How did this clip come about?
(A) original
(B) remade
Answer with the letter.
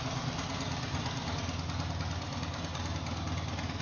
A